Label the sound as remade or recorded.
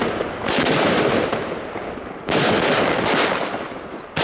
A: recorded